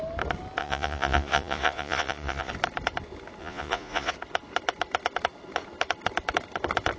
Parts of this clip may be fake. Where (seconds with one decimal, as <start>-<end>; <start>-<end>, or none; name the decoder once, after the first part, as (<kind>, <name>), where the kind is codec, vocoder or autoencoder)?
0.6-2.5 (vocoder, Vocos); 3.4-4.1